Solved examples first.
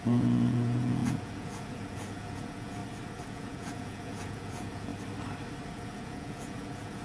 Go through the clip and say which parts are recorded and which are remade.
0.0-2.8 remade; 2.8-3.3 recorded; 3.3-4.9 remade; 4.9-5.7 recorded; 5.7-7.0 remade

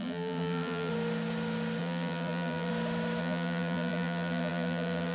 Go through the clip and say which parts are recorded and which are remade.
0.0-0.9 remade; 0.9-1.8 recorded; 1.8-2.7 remade; 2.7-3.2 recorded; 3.2-5.1 remade